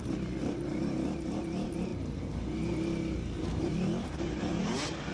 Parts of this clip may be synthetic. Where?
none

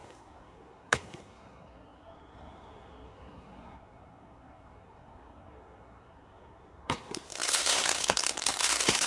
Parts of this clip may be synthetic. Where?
0.0-9.1 (codec, SNAC)

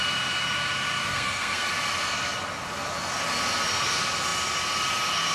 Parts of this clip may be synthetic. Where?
1.1-1.7 (codec, SNAC)

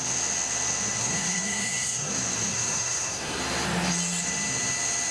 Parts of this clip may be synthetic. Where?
1.0-2.1 (codec, SNAC); 2.5-3.4

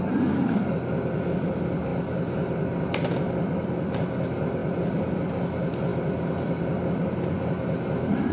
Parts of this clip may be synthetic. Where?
4.6-5.2 (vocoder, BigVGAN v2); 5.9-6.8

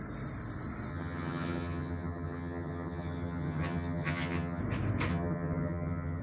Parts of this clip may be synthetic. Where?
0.9-4.6 (vocoder, HiFi-GAN); 5.1-6.2

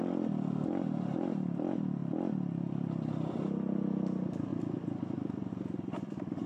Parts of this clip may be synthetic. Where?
0.0-2.0 (vocoder, BigVGAN v2); 2.7-4.5; 5.5-6.5

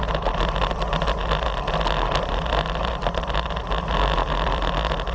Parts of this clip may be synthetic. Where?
none